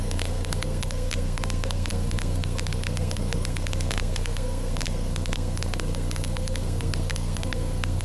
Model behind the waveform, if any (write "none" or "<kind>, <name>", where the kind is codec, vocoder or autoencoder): codec, SNAC